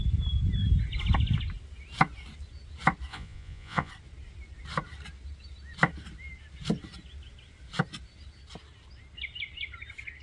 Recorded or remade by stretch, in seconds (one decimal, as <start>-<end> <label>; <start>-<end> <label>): 0.0-3.1 recorded; 3.1-3.9 remade; 3.9-10.2 recorded